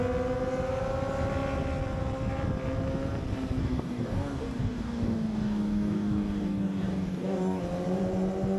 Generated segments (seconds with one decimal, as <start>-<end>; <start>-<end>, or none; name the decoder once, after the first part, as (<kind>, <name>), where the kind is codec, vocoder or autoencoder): 3.6-7.6 (codec, DAC)